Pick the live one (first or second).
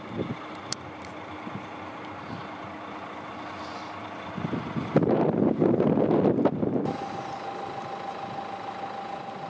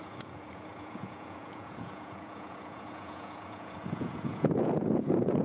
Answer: first